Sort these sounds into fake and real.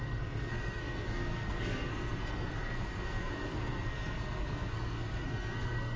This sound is fake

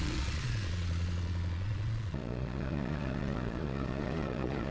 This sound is fake